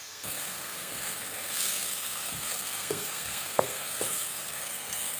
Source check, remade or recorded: remade